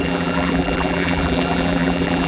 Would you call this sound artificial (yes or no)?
yes